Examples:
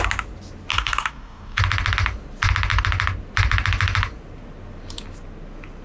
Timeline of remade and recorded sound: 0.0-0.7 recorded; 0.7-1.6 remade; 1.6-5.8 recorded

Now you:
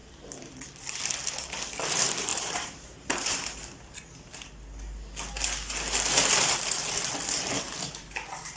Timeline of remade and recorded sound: 0.0-2.3 recorded; 2.3-3.3 remade; 3.3-8.6 recorded

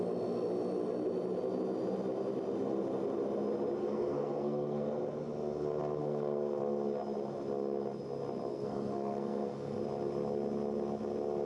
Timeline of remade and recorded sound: 0.0-3.8 recorded; 3.8-5.0 remade; 5.0-6.0 recorded; 6.0-6.6 remade; 6.6-8.5 recorded; 8.5-9.8 remade; 9.8-11.5 recorded

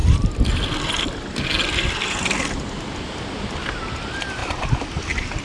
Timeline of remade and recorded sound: 0.0-3.2 remade; 3.2-5.4 recorded

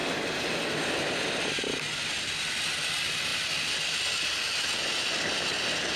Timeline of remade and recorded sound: 0.0-6.0 recorded